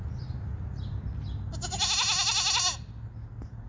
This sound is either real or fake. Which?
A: real